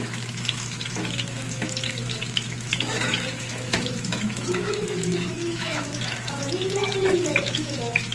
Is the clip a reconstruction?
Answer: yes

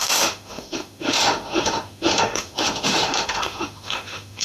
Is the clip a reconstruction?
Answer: yes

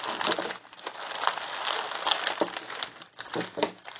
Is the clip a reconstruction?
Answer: no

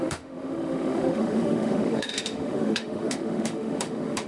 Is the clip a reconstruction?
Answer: yes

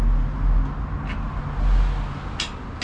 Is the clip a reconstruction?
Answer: no